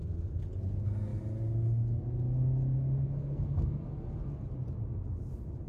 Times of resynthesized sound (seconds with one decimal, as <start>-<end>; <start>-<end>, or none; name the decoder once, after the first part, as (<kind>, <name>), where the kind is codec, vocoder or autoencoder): 3.0-3.8 (codec, SNAC)